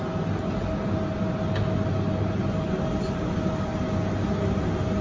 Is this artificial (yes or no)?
no